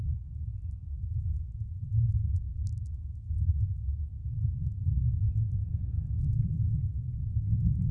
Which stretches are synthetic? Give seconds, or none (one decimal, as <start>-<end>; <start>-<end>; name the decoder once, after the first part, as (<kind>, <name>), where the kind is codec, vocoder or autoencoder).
none